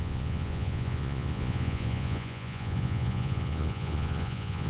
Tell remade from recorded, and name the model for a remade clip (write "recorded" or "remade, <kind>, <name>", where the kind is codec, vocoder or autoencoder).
remade, vocoder, Vocos